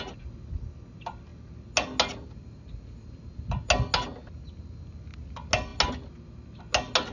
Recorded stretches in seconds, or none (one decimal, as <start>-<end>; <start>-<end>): 0.0-7.1